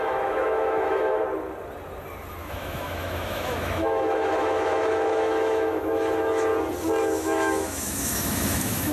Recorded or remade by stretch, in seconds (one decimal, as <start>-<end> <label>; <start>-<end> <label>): 0.0-1.2 remade; 1.2-2.4 recorded; 2.4-6.5 remade; 6.5-7.0 recorded; 7.0-8.9 remade